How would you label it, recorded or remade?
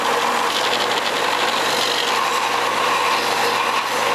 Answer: recorded